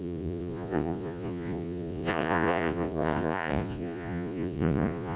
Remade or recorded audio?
remade